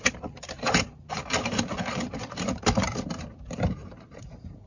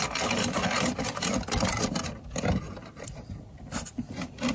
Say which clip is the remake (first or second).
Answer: first